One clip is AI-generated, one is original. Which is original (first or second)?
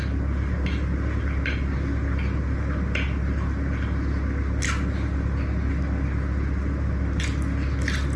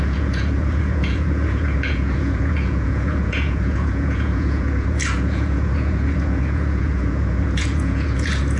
first